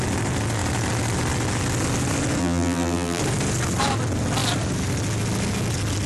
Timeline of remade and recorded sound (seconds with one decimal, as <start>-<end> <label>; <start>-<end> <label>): 0.0-2.4 recorded; 2.4-3.2 remade; 3.2-6.1 recorded